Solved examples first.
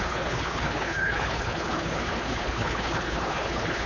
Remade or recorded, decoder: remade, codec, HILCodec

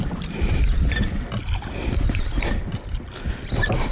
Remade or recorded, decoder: recorded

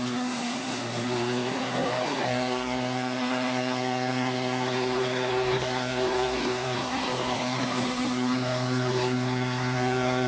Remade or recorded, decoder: remade, codec, SNAC